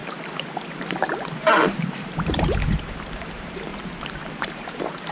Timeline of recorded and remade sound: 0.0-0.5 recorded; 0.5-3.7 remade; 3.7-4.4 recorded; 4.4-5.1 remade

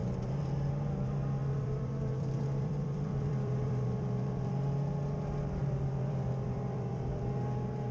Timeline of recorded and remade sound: 0.0-1.4 recorded; 1.4-4.5 remade; 4.5-5.6 recorded; 5.6-7.3 remade; 7.3-7.9 recorded

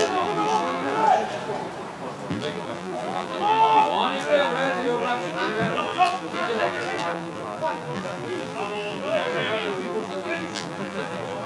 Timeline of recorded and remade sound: 0.0-1.0 remade; 1.0-2.3 recorded; 2.3-11.5 remade

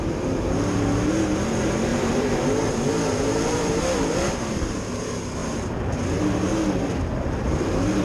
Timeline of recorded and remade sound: 0.0-1.9 recorded; 1.9-4.8 remade; 4.8-5.4 recorded; 5.4-5.9 remade; 5.9-8.0 recorded